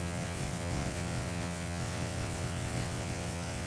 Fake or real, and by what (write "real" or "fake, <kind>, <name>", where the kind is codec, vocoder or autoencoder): fake, vocoder, WaveNeXt